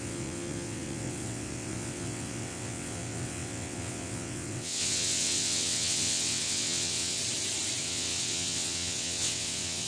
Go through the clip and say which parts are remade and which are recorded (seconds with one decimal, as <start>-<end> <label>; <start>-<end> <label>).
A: 0.0-7.2 remade; 7.2-7.8 recorded; 7.8-9.9 remade